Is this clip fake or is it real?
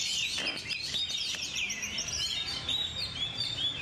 fake